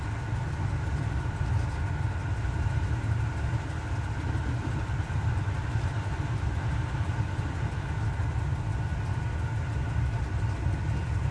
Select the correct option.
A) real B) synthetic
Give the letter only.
A